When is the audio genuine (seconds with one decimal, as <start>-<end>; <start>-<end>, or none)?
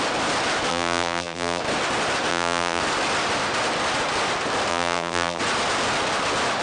0.0-0.7; 1.6-2.3; 2.8-4.7; 5.4-6.6